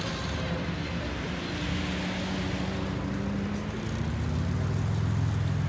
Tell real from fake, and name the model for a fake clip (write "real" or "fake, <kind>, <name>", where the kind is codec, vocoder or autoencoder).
real